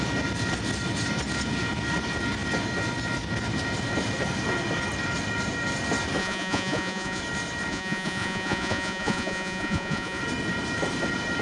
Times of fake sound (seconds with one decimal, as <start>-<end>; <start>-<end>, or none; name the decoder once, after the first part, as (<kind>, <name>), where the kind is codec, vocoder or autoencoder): 6.2-7.2 (vocoder, Vocos); 7.7-10.2